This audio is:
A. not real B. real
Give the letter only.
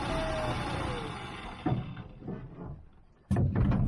B